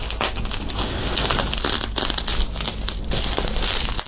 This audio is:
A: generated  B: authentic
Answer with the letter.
B